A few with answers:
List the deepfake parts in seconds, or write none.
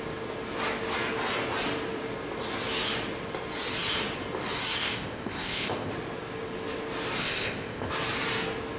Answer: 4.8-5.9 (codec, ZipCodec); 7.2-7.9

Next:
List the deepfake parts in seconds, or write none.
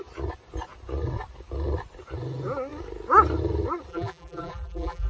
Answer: 3.9-5.1 (vocoder, BigVGAN v2)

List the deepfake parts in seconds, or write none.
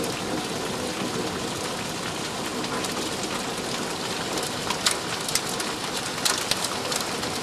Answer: none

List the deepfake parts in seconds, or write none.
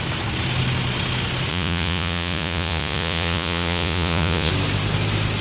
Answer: 1.5-4.5 (vocoder, Vocos)